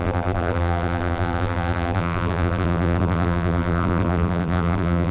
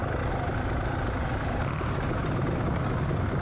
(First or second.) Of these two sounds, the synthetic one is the first